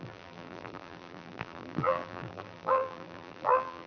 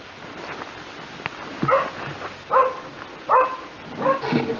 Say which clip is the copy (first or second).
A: first